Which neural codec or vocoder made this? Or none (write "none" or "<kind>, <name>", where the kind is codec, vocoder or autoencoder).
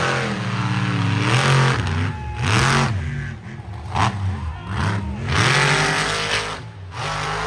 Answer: none